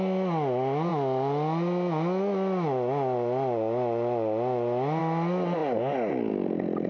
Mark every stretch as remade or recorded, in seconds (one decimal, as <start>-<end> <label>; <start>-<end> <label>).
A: 0.0-6.9 recorded